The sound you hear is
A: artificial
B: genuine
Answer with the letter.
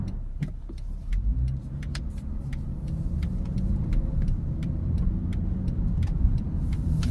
A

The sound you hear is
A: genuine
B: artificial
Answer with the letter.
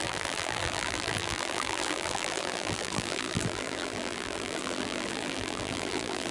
B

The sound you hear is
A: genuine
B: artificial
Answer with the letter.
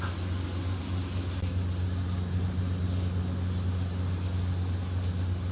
A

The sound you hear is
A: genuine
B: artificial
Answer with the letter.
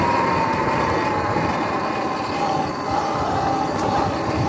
A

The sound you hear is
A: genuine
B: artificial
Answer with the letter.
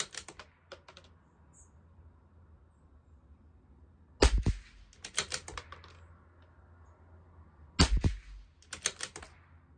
A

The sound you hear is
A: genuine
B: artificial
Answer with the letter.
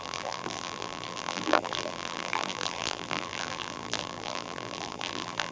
B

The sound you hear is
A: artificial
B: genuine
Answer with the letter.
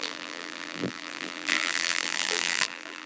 A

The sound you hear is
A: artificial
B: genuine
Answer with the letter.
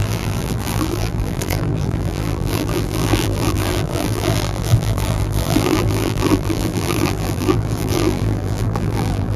A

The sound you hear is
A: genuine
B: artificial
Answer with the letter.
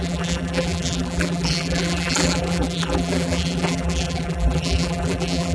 B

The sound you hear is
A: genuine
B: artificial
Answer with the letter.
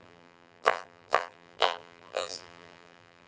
B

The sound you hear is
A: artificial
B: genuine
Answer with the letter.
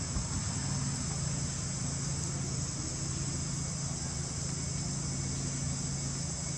B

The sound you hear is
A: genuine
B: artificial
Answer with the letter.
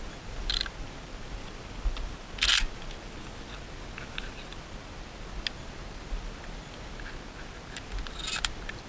A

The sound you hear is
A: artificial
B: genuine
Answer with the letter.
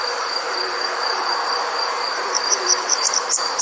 A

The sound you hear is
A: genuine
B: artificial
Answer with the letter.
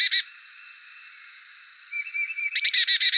A